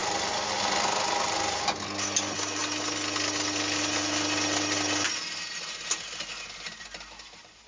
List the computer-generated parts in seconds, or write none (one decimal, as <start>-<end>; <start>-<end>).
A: none